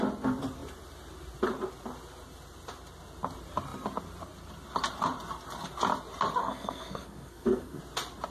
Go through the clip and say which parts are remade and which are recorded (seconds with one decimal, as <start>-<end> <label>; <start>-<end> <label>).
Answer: 0.0-6.4 recorded; 6.4-7.8 remade; 7.8-8.3 recorded